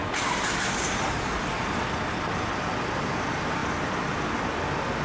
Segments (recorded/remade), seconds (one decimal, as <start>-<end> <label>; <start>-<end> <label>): 0.0-5.0 recorded